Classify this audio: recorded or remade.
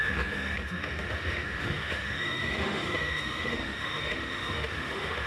remade